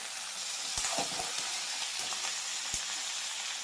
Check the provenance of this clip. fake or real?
real